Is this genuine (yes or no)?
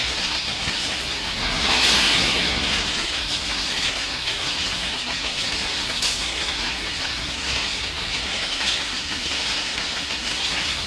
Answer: no